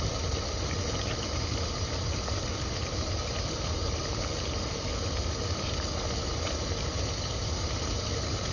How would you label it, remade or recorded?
recorded